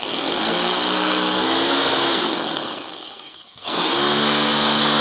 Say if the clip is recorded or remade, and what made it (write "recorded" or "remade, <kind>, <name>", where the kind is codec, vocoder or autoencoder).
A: remade, codec, SNAC